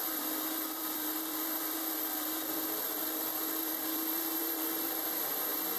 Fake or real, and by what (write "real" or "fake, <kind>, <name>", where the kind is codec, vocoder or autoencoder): fake, vocoder, BigVGAN v2